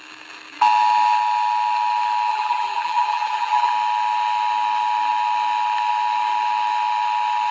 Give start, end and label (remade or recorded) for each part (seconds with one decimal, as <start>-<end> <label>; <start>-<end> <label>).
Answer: 0.0-2.3 recorded; 2.3-3.7 remade; 3.7-7.5 recorded